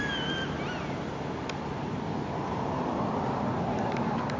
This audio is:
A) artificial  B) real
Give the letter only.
B